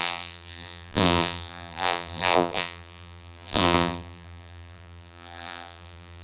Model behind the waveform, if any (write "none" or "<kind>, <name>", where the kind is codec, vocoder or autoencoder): vocoder, BigVGAN v2